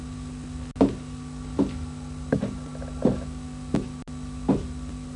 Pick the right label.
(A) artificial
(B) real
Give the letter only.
B